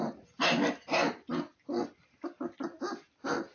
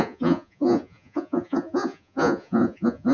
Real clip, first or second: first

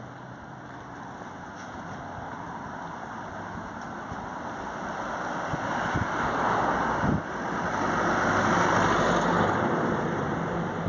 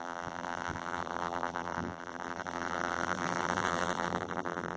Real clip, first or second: first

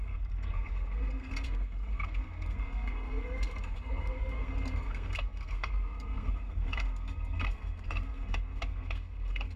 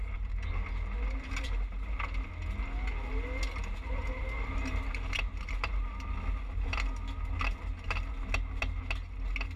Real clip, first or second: second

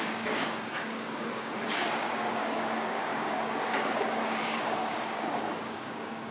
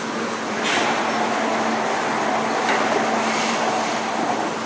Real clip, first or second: second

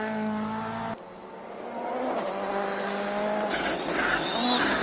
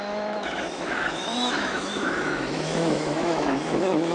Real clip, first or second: first